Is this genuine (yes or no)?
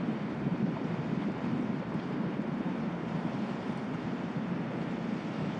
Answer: no